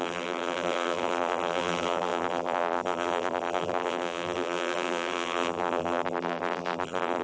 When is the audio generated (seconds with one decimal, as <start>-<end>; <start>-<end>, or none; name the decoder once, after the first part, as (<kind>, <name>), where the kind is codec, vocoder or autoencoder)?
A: 0.0-7.2 (vocoder, BigVGAN v2)